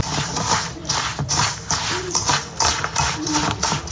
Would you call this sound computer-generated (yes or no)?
no